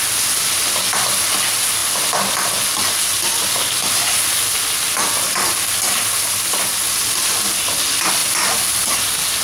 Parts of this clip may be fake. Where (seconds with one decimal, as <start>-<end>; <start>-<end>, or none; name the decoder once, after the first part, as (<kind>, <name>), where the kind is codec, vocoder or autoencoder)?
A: none